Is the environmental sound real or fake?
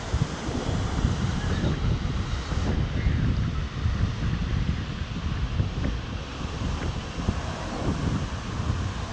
real